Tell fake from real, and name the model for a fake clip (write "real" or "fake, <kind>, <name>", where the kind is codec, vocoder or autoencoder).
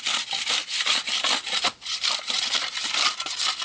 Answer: real